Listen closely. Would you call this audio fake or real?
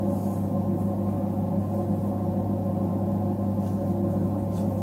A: real